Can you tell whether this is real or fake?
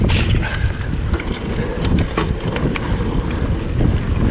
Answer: real